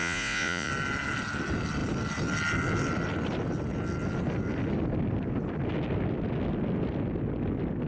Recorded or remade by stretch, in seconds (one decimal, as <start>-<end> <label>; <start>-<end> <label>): 0.0-0.7 remade; 0.7-7.9 recorded

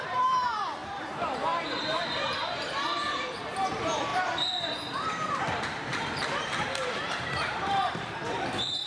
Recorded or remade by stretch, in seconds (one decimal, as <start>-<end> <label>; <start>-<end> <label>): 0.0-8.9 remade

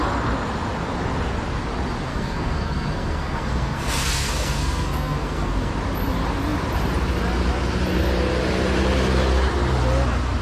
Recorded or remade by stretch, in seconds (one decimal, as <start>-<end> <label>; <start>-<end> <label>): 0.0-2.1 recorded; 2.1-5.7 remade; 5.7-10.4 recorded

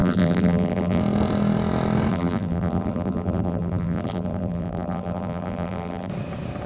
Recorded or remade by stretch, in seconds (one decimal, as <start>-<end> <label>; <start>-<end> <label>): 0.0-1.0 remade; 1.0-2.1 recorded; 2.1-6.1 remade; 6.1-6.7 recorded

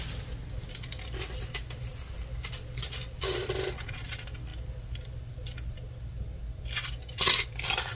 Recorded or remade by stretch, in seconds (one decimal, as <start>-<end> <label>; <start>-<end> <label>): 0.0-7.9 recorded